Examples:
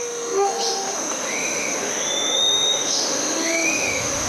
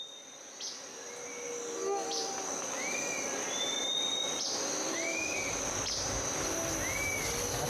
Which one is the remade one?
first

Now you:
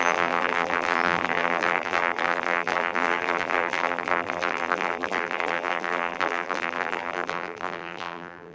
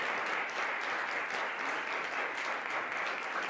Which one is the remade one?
first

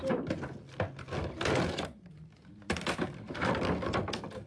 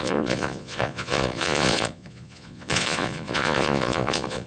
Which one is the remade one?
second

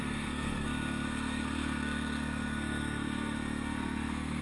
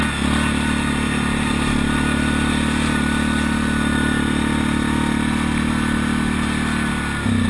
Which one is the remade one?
first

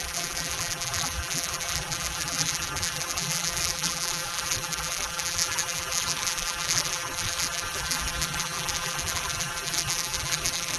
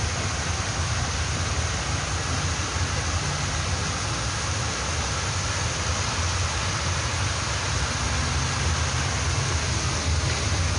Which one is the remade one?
first